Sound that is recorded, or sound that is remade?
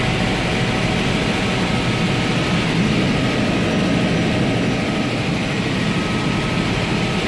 recorded